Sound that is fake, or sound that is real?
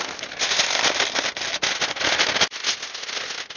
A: real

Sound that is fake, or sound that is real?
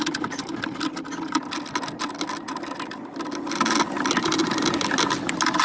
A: real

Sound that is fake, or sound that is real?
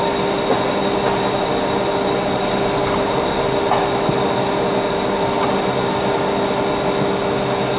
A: real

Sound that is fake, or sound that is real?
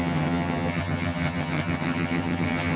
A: fake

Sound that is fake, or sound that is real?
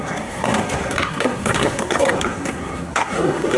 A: fake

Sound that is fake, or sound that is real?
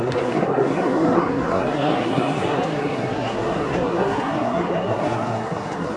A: fake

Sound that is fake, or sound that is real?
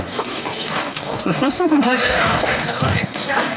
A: fake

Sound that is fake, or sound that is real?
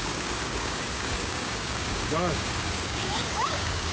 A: fake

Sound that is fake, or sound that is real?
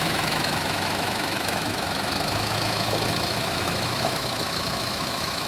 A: fake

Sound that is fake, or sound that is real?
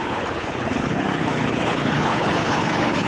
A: fake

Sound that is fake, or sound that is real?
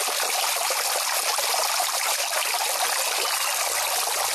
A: real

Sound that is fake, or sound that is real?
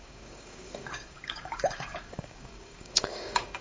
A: fake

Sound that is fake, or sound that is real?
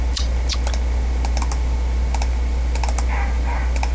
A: real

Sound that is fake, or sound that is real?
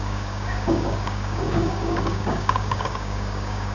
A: fake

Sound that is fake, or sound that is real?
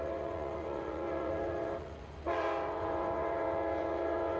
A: fake